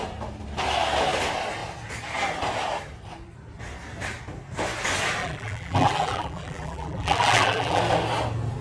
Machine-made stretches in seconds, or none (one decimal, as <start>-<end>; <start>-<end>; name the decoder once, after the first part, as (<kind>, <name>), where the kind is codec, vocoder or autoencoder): 5.2-7.8 (vocoder, BigVGAN v2)